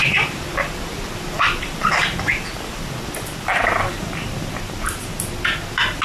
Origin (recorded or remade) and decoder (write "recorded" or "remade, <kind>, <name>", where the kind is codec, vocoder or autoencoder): remade, vocoder, BigVGAN v2